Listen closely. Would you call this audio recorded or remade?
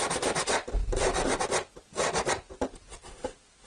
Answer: recorded